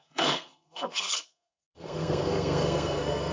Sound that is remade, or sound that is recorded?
remade